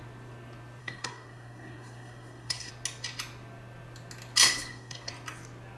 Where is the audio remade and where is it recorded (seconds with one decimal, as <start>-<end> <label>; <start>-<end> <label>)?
0.0-0.8 recorded; 0.8-2.7 remade; 2.7-4.4 recorded; 4.4-5.1 remade; 5.1-5.8 recorded